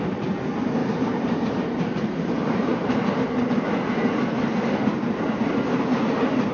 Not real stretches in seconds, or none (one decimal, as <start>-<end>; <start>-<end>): 0.8-3.4